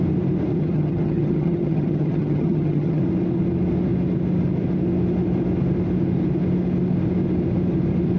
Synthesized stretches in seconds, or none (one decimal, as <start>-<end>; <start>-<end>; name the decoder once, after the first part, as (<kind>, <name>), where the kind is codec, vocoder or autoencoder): 0.5-3.0 (vocoder, HiFi-GAN)